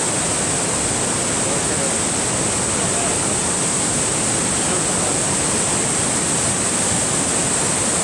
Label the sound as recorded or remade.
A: recorded